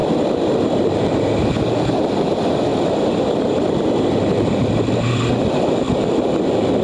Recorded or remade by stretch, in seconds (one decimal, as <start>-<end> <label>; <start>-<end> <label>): 0.0-6.8 remade